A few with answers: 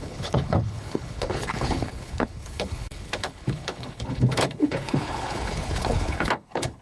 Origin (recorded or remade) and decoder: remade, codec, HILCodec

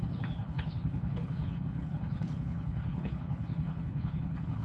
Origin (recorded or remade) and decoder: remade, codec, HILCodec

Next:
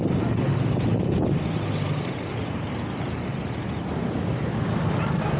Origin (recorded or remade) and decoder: recorded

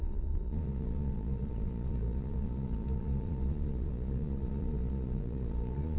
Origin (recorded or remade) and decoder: remade, vocoder, Vocos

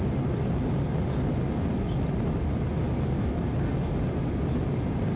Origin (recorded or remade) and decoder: recorded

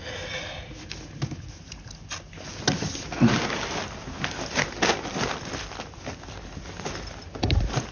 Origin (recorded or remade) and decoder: recorded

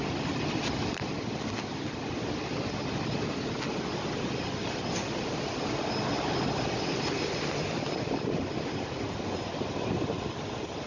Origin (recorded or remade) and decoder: recorded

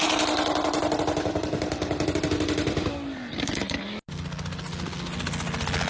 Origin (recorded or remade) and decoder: recorded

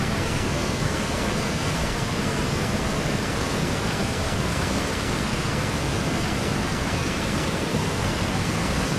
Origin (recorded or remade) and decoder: remade, codec, SNAC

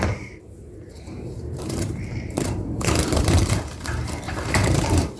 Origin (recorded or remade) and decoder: remade, vocoder, BigVGAN v2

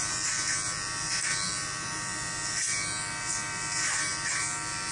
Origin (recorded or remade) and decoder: remade, vocoder, BigVGAN v2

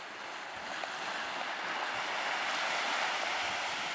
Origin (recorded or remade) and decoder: recorded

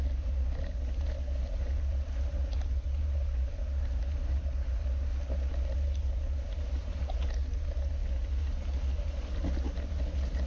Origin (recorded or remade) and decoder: recorded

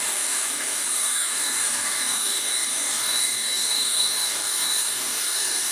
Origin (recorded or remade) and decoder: remade, codec, DAC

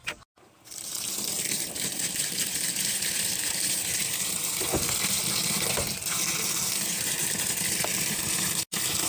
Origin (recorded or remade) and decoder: recorded